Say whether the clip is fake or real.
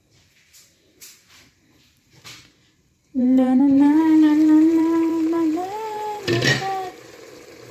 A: fake